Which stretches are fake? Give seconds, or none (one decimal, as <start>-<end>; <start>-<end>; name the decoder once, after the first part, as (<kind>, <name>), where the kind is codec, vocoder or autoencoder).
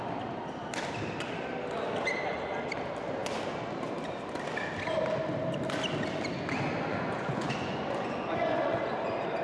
6.9-8.8 (vocoder, Vocos)